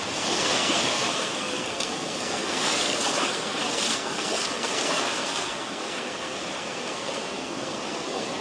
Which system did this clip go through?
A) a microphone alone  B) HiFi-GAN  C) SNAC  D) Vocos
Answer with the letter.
C